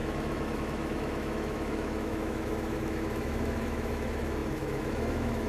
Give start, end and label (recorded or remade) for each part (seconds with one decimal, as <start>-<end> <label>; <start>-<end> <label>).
0.0-5.5 remade